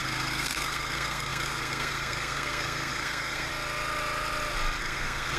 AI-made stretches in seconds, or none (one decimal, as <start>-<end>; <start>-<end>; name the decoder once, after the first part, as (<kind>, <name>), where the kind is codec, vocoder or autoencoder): 0.0-3.5 (codec, SNAC); 4.8-5.4